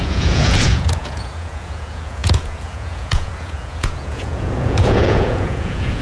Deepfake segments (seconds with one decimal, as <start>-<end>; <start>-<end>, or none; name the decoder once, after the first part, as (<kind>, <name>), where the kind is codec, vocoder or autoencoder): 0.0-6.0 (vocoder, Vocos)